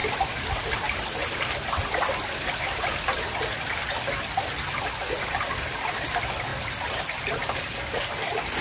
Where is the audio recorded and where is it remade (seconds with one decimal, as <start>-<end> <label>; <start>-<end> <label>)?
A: 0.0-6.5 recorded; 6.5-8.0 remade; 8.0-8.6 recorded

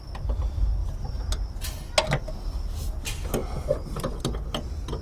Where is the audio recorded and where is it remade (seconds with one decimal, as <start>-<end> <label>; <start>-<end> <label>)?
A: 0.0-0.8 recorded; 0.8-1.3 remade; 1.3-3.4 recorded; 3.4-4.2 remade; 4.2-5.0 recorded